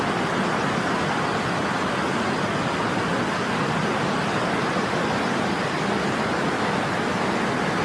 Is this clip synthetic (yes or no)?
no